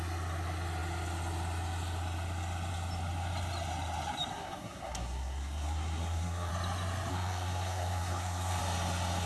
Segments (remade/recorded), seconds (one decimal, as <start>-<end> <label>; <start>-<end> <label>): 0.0-4.3 recorded; 4.3-6.5 remade; 6.5-7.1 recorded; 7.1-8.6 remade; 8.6-9.3 recorded